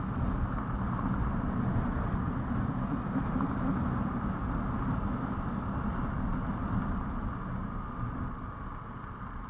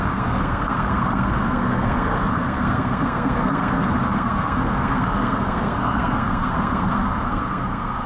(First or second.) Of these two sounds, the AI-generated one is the second